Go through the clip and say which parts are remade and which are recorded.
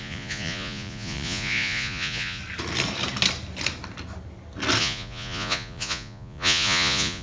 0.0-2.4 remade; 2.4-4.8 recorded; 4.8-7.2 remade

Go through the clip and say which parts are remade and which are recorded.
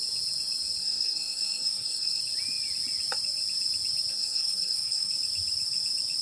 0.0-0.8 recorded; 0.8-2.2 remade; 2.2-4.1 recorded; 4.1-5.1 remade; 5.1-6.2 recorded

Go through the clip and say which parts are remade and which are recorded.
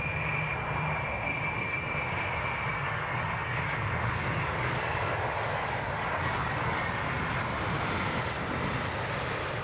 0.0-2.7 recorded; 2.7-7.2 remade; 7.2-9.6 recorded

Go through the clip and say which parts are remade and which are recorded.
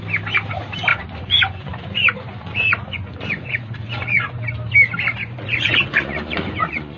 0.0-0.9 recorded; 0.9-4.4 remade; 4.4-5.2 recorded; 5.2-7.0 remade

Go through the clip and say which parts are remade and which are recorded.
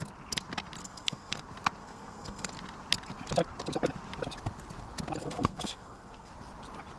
0.0-0.8 recorded; 0.8-1.4 remade; 1.4-1.8 recorded; 1.8-2.5 remade; 2.5-5.2 recorded; 5.2-6.3 remade; 6.3-7.0 recorded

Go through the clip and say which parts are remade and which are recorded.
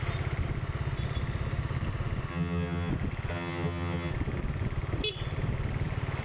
0.0-2.3 recorded; 2.3-2.9 remade; 2.9-3.3 recorded; 3.3-4.1 remade; 4.1-6.2 recorded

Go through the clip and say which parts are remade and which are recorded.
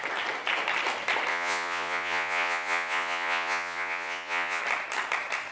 0.0-1.3 recorded; 1.3-4.6 remade; 4.6-5.5 recorded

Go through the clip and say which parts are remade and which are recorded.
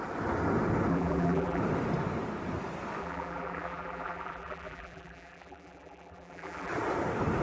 0.0-0.9 recorded; 0.9-1.6 remade; 1.6-3.0 recorded; 3.0-6.7 remade; 6.7-7.4 recorded